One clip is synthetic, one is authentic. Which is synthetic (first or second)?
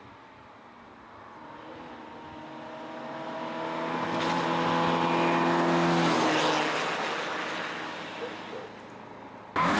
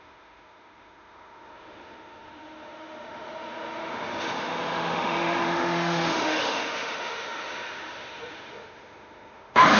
second